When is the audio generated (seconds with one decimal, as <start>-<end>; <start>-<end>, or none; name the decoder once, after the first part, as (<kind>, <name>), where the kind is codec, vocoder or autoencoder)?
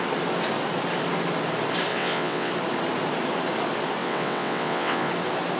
1.9-2.5 (vocoder, WaveNeXt); 4.0-5.1